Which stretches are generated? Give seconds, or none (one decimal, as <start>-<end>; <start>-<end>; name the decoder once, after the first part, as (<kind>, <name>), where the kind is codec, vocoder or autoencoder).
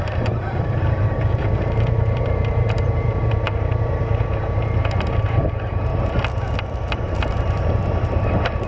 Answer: 0.0-5.9 (vocoder, BigVGAN v2); 7.2-8.7